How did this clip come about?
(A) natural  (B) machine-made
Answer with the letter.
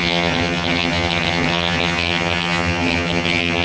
B